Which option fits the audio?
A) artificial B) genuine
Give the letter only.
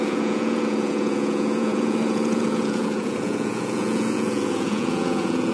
A